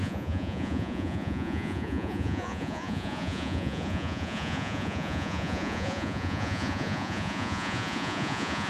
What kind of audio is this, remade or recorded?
remade